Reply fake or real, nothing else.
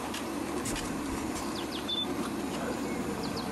real